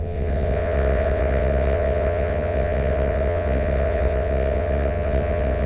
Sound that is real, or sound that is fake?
fake